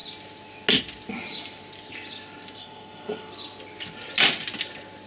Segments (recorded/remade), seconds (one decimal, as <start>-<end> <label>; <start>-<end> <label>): 0.0-2.6 recorded; 2.6-3.3 remade; 3.3-5.1 recorded